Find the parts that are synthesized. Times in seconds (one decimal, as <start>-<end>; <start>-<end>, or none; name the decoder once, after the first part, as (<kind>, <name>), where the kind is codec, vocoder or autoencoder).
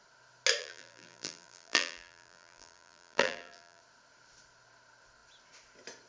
0.6-3.8 (vocoder, BigVGAN v2)